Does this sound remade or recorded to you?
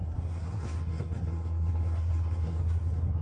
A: remade